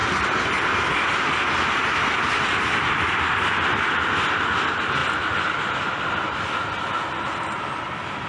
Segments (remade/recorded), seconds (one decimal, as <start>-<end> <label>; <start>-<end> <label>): 0.0-8.3 recorded